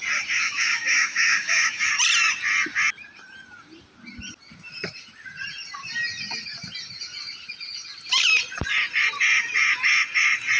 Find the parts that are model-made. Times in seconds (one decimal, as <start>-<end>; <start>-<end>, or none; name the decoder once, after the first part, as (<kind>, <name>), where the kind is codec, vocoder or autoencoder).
0.4-1.9 (autoencoder, DAC-VAE)